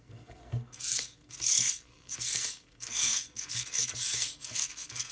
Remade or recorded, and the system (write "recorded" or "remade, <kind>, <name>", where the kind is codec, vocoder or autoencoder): remade, codec, SNAC